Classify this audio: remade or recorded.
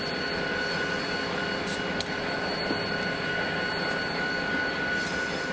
recorded